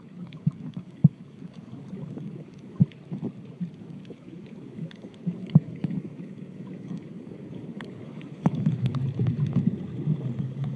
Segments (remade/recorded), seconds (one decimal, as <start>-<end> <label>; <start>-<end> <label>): 0.0-2.8 remade; 2.8-3.8 recorded; 3.8-9.0 remade; 9.0-10.4 recorded; 10.4-10.8 remade